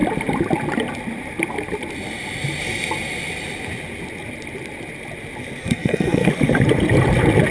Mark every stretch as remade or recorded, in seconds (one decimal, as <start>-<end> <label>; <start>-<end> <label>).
0.0-5.6 recorded; 5.6-6.3 remade; 6.3-7.5 recorded